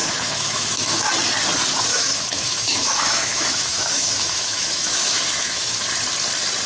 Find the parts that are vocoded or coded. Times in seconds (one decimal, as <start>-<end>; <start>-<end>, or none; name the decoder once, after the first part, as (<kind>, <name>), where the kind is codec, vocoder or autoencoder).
0.0-1.1 (autoencoder, DAC-VAE); 1.9-5.9